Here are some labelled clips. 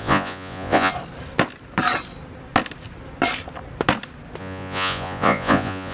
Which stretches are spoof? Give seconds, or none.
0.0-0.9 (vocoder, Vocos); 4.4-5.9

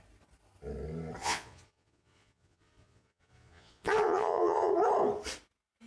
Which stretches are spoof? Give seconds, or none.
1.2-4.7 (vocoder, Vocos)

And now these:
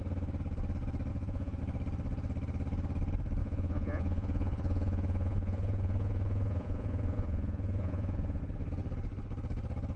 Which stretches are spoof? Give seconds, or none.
1.1-1.6 (vocoder, Vocos); 3.4-8.4

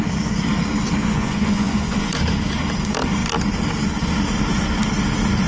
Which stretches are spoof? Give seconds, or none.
1.0-2.1 (vocoder, Vocos)

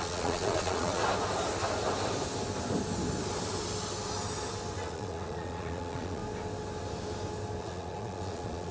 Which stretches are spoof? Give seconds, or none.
0.0-1.0 (vocoder, Vocos); 4.8-6.2; 7.6-8.7